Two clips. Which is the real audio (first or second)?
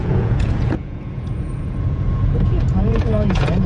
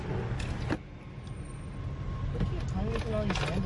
second